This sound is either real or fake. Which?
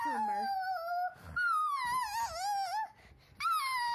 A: real